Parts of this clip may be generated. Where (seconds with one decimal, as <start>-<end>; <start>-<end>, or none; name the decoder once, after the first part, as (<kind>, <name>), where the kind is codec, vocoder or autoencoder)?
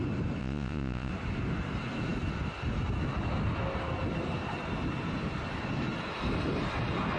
0.4-1.1 (vocoder, Vocos)